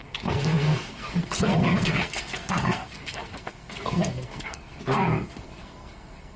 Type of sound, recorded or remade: remade